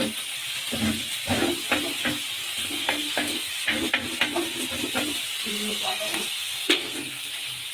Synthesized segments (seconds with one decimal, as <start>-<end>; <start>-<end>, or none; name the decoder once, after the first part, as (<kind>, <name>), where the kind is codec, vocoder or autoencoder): 2.6-3.5 (codec, SNAC); 5.5-7.3